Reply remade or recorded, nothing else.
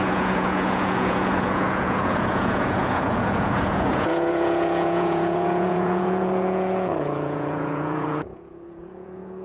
remade